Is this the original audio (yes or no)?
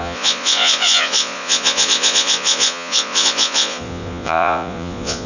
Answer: no